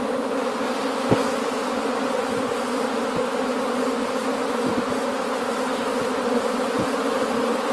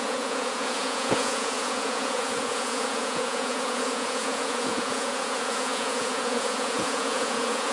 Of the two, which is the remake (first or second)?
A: second